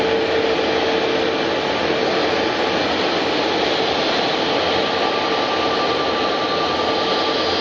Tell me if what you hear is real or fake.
real